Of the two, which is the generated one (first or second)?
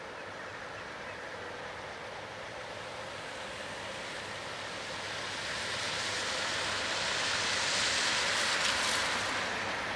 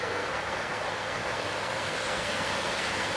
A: second